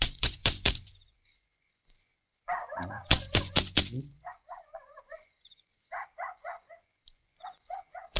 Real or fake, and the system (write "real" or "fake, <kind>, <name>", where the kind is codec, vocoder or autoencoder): fake, vocoder, Vocos